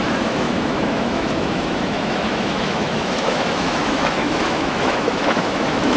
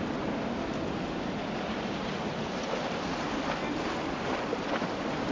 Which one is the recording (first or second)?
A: second